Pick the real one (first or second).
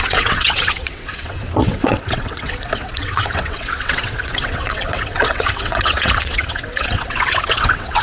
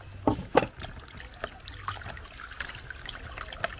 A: second